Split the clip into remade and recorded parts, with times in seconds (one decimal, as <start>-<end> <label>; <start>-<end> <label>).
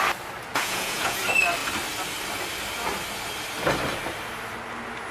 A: 0.0-0.5 recorded; 0.5-1.2 remade; 1.2-5.1 recorded